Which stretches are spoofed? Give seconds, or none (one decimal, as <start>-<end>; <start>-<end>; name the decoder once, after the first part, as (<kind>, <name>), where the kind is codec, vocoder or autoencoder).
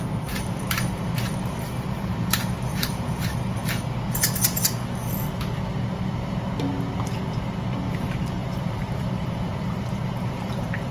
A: 0.0-3.6 (vocoder, BigVGAN v2); 7.9-10.9